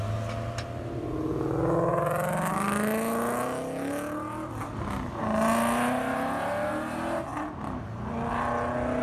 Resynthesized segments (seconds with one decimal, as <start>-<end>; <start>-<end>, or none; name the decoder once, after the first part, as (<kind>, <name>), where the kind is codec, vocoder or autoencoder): none